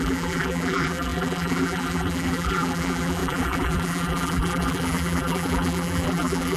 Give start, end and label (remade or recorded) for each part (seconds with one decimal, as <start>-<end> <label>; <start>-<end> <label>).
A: 0.0-6.6 remade